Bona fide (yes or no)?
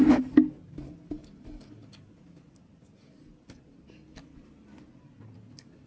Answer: yes